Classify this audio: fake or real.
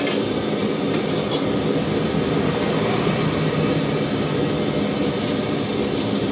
real